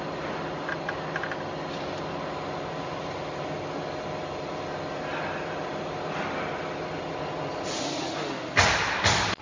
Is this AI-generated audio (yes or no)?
no